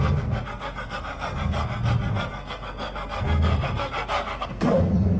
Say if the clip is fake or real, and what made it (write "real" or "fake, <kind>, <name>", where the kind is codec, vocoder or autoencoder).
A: fake, codec, SNAC